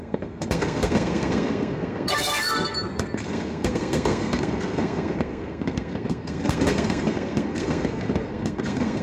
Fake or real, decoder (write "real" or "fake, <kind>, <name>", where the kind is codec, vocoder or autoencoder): fake, codec, SNAC